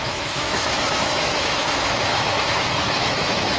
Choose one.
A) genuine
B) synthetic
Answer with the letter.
B